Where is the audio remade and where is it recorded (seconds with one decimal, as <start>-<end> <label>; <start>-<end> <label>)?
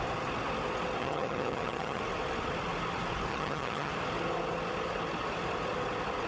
0.0-1.0 recorded; 1.0-2.0 remade; 2.0-3.3 recorded; 3.3-3.9 remade; 3.9-6.3 recorded